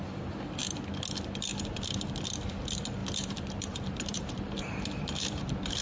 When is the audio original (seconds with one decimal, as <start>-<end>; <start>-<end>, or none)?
0.0-1.5; 2.1-3.0